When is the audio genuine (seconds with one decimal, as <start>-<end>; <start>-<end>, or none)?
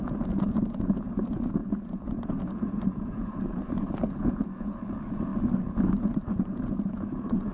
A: 5.3-5.9